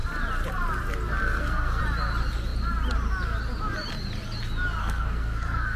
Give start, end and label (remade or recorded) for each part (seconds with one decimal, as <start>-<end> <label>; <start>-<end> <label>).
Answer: 0.0-1.2 recorded; 1.2-1.8 remade; 1.8-4.8 recorded; 4.8-5.8 remade